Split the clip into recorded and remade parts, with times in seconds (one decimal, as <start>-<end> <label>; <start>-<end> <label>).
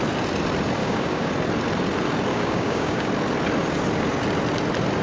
0.0-0.8 recorded; 0.8-1.3 remade; 1.3-2.3 recorded; 2.3-3.1 remade; 3.1-5.0 recorded